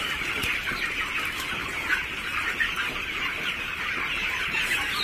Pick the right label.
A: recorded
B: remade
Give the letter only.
B